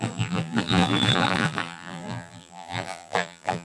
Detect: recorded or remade remade